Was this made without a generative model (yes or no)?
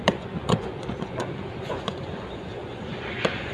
no